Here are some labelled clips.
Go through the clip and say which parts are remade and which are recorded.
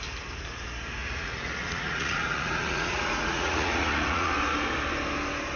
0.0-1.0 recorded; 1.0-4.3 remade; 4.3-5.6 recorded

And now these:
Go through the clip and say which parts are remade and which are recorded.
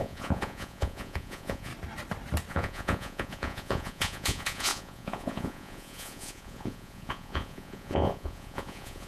0.0-1.7 remade; 1.7-2.5 recorded; 2.5-9.1 remade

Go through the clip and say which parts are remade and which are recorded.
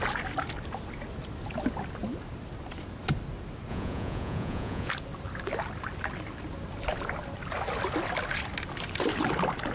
0.0-3.7 recorded; 3.7-4.9 remade; 4.9-9.7 recorded